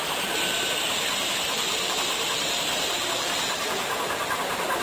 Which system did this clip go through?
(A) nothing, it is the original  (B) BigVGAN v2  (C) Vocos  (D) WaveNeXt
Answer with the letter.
B